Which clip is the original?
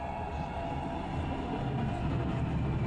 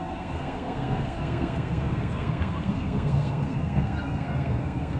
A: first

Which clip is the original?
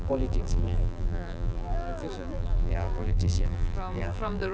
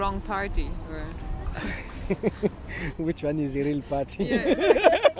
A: second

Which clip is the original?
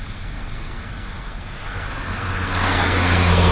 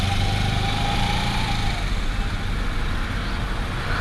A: second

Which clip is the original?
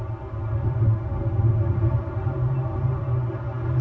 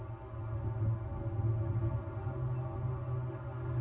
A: second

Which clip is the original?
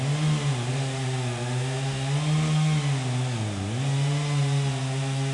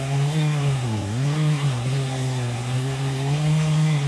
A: first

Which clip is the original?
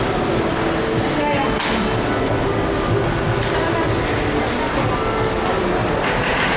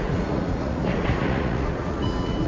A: first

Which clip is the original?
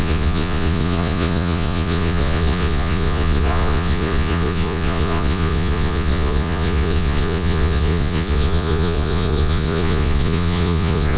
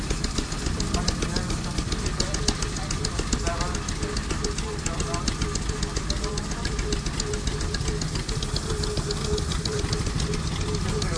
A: second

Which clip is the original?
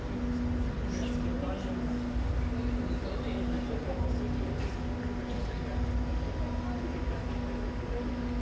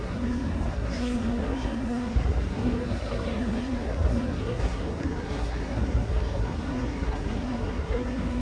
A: first